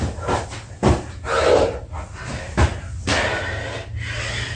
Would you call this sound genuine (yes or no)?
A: yes